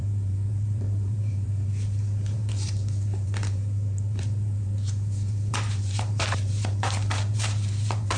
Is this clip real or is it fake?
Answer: fake